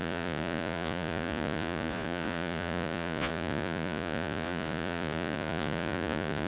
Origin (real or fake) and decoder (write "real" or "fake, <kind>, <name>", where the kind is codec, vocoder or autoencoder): fake, vocoder, Vocos